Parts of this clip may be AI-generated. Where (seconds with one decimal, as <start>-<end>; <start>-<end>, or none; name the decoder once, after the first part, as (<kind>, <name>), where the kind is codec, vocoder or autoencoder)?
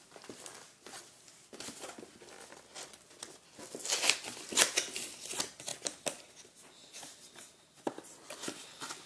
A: 6.8-8.0 (vocoder, BigVGAN v2)